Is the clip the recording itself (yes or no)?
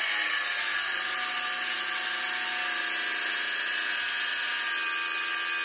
yes